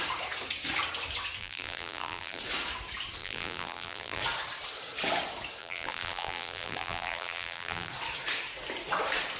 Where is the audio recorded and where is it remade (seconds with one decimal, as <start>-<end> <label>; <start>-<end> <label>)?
0.0-1.4 recorded; 1.4-2.4 remade; 2.4-3.2 recorded; 3.2-4.2 remade; 4.2-5.6 recorded; 5.6-7.9 remade; 7.9-9.4 recorded